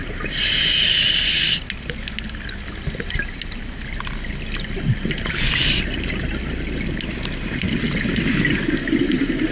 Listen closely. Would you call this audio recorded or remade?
recorded